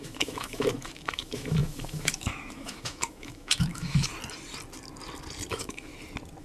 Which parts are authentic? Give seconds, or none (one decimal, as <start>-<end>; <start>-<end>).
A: 4.1-5.5; 5.9-6.4